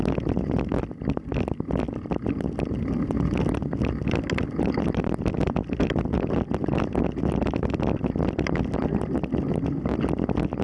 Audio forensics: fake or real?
real